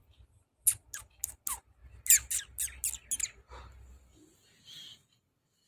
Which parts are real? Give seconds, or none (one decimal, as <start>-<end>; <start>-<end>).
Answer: 0.0-5.7